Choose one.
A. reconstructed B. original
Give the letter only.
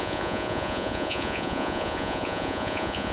A